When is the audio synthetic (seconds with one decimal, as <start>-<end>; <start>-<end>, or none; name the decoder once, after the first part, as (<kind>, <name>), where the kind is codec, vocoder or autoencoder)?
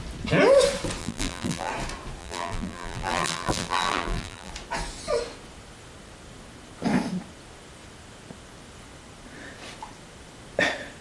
1.0-1.7 (vocoder, BigVGAN v2); 2.2-4.5